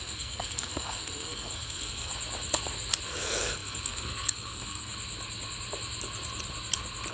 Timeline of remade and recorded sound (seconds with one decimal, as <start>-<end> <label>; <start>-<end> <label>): 0.0-2.1 remade; 2.1-3.1 recorded; 3.1-4.9 remade; 4.9-7.1 recorded